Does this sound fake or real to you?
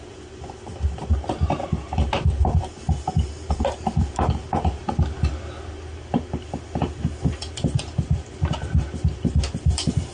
real